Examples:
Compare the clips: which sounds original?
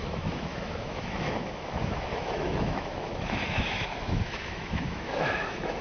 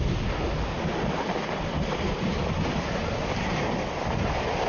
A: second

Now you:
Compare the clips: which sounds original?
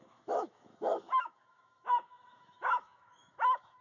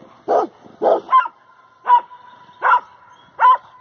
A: second